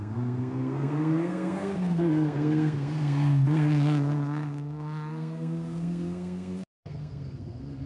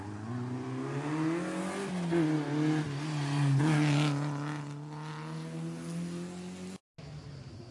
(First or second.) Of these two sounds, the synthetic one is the first